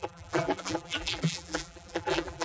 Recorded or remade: remade